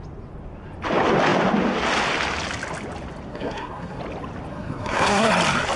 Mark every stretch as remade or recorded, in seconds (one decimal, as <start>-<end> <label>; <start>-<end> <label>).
0.0-3.3 recorded; 3.3-4.0 remade; 4.0-4.5 recorded; 4.5-5.3 remade; 5.3-5.8 recorded